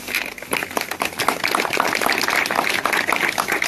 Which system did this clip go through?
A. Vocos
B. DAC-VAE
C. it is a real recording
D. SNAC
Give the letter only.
C